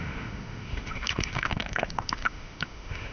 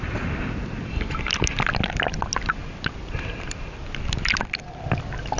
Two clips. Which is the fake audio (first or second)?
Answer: first